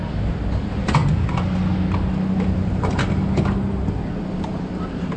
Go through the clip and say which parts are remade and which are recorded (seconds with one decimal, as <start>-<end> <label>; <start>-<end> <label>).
0.0-5.2 recorded